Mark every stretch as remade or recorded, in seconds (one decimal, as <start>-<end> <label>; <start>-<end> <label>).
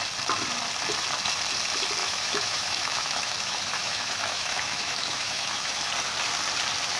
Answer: 0.0-2.0 recorded; 2.0-5.9 remade; 5.9-7.0 recorded